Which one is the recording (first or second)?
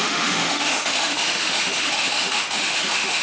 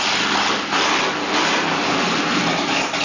second